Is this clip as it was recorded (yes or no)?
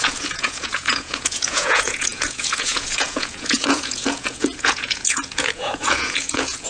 no